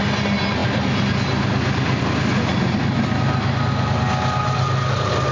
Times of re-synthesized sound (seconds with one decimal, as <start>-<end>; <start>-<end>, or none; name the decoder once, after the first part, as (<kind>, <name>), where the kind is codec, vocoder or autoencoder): none